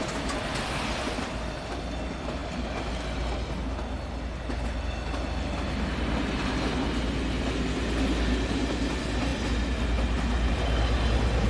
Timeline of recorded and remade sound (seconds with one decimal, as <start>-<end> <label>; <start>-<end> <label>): 0.0-11.5 recorded